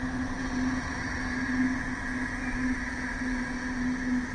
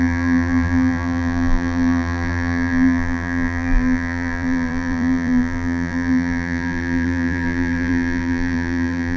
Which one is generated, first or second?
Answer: second